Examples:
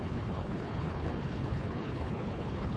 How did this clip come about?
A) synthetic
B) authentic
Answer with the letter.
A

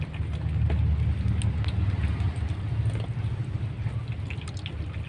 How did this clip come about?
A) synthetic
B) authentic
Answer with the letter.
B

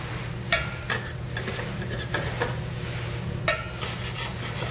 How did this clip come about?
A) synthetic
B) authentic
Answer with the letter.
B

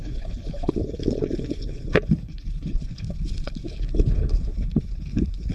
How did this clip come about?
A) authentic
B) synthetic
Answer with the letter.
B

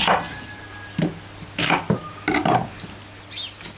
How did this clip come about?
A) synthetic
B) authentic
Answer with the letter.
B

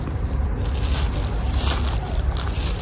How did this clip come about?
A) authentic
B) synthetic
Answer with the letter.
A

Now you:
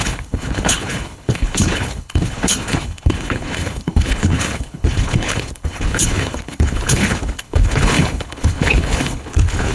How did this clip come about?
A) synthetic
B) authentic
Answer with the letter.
A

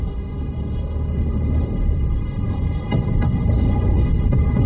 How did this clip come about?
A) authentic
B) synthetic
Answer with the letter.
B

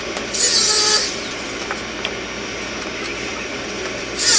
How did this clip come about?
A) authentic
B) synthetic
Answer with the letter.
A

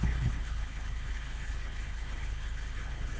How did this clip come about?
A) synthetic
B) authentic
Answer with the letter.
A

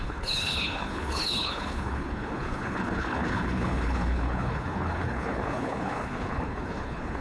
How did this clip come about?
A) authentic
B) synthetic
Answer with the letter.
B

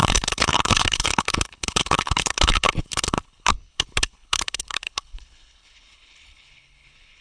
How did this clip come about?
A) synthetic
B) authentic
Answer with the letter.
A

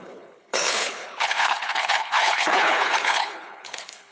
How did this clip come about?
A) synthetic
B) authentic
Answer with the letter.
A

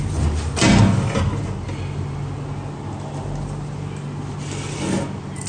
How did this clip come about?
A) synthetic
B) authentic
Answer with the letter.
B